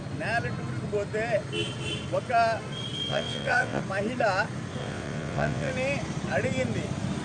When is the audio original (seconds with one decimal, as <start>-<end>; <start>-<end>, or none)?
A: 0.0-3.1; 3.8-4.8; 5.7-7.2